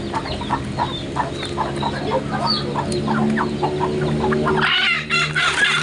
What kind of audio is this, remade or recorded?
recorded